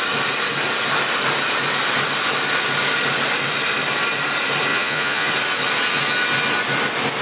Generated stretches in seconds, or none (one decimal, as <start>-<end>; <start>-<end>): 4.7-5.3